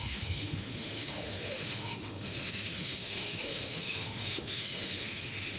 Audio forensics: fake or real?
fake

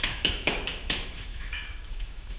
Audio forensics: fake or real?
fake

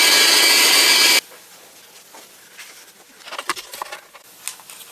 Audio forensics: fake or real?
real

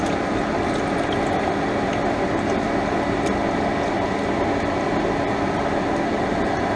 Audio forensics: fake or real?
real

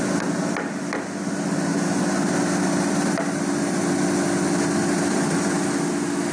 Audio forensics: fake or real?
real